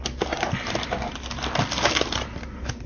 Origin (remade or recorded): recorded